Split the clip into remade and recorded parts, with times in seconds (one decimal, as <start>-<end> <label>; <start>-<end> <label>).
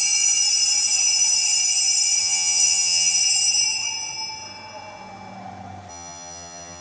0.0-2.2 recorded; 2.2-3.2 remade; 3.2-5.9 recorded; 5.9-6.8 remade